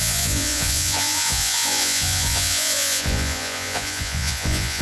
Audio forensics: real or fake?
fake